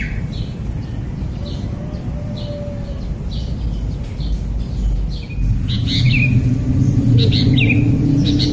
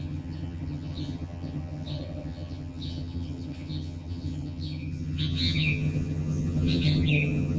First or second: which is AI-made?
second